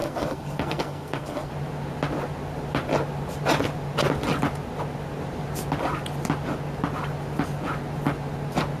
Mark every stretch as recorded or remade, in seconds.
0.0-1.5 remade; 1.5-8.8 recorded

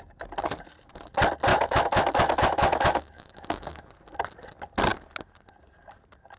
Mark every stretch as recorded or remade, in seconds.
0.0-1.5 recorded; 1.5-3.9 remade; 3.9-6.4 recorded

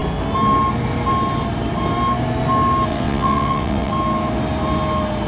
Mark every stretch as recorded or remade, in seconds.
0.0-2.9 recorded; 2.9-3.9 remade; 3.9-5.3 recorded

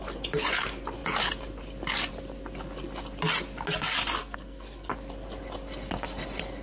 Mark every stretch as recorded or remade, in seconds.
0.0-4.2 recorded; 4.2-4.9 remade; 4.9-6.6 recorded